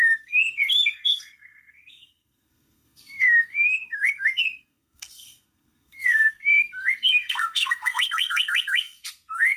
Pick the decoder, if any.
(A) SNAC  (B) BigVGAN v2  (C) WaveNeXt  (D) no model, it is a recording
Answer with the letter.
A